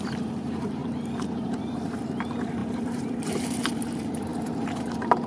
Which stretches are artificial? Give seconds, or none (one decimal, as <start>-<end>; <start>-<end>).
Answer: 0.0-5.3